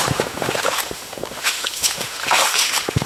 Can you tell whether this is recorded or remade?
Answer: remade